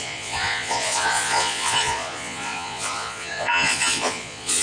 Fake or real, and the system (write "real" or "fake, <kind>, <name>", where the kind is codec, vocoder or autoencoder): fake, vocoder, Vocos